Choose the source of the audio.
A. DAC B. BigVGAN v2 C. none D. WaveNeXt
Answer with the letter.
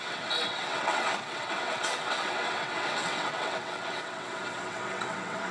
D